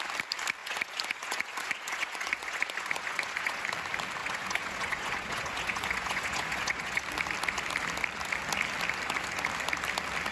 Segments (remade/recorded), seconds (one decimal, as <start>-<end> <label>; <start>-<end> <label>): 0.0-0.6 recorded; 0.6-3.6 remade; 3.6-4.2 recorded; 4.2-7.0 remade; 7.0-10.3 recorded